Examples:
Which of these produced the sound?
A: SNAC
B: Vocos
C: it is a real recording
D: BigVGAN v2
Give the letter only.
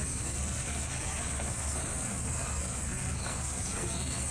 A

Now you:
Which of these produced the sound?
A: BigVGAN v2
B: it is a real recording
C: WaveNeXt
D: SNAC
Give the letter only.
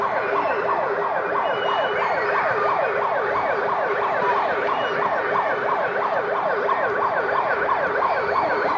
B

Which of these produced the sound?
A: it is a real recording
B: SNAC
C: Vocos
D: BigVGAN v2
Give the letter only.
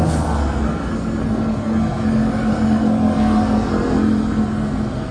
B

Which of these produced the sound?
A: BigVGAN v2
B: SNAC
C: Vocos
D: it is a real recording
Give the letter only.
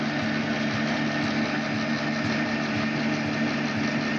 D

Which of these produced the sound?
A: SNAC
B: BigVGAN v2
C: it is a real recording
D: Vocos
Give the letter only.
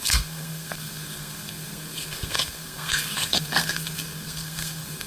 A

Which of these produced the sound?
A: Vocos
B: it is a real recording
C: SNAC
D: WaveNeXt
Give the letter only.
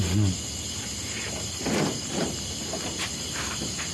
B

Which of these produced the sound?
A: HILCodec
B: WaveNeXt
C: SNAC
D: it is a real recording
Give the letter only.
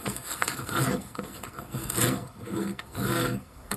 C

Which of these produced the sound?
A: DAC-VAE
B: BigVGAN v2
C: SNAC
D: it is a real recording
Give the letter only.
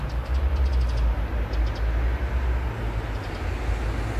D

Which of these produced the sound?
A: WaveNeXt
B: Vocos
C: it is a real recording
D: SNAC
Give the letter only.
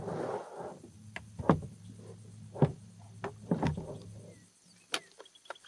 C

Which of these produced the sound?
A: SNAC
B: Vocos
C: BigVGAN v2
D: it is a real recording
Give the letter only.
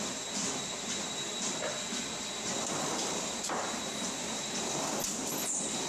D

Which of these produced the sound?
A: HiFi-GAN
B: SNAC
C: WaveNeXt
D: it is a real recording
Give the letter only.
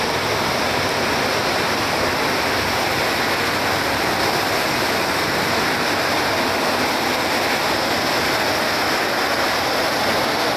D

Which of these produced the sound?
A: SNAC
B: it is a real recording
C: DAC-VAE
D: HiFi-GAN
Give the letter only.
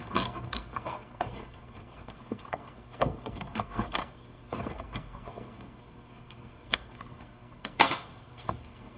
A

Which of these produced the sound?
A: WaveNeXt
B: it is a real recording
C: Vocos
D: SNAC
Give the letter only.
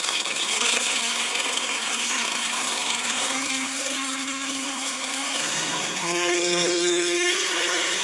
D